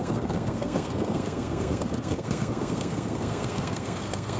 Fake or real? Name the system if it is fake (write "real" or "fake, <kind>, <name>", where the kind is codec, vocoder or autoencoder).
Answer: fake, codec, SNAC